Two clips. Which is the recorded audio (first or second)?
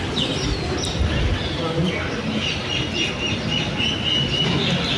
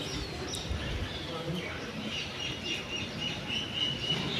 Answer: first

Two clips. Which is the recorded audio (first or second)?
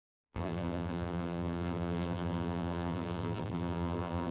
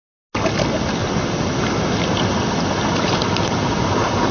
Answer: second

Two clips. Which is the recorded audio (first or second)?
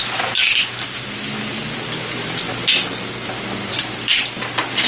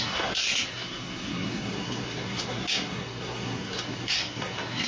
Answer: first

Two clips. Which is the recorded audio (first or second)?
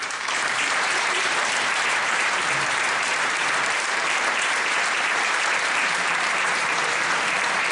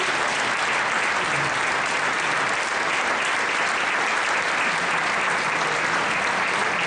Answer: second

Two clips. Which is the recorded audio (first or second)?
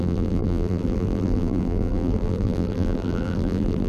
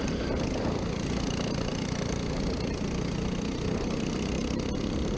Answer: second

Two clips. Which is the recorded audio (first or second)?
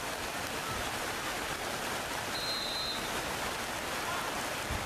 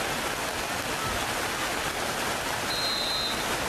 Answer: second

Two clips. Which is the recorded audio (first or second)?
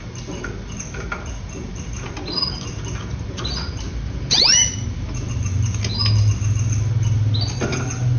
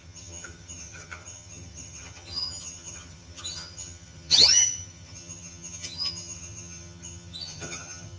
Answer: first